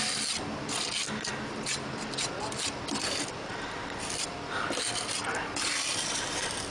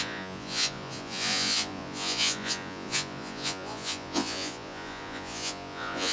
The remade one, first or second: second